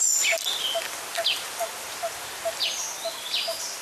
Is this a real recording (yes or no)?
yes